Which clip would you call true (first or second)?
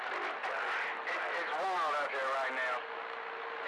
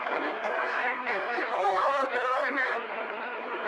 first